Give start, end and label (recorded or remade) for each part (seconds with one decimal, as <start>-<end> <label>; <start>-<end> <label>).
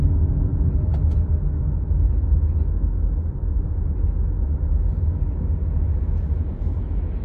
0.0-0.5 recorded; 0.5-1.1 remade; 1.1-7.2 recorded